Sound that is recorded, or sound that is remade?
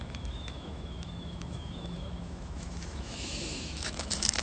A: remade